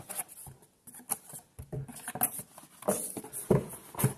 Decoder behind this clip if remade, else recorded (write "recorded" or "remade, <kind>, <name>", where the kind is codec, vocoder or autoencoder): recorded